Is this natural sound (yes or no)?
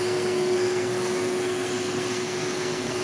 no